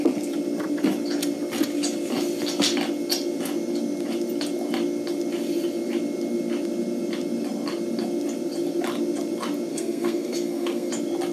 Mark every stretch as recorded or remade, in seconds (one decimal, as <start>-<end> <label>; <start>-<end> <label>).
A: 0.0-9.7 recorded; 9.7-10.9 remade; 10.9-11.3 recorded